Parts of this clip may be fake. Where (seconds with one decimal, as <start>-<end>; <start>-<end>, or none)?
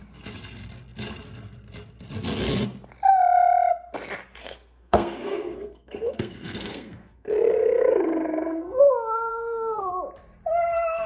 4.4-8.8; 9.3-9.9